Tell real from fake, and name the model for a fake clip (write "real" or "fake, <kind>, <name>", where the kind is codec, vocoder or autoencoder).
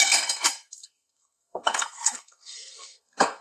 fake, codec, SNAC